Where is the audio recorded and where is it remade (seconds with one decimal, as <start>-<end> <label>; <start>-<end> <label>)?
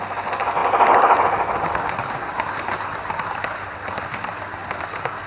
0.0-5.3 recorded